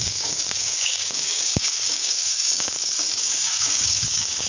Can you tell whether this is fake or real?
fake